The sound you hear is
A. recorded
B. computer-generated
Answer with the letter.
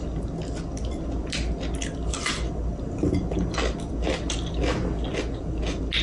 A